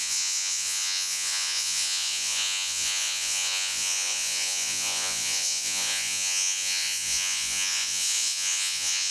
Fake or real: fake